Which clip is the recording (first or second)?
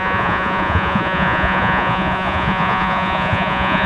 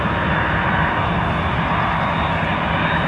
second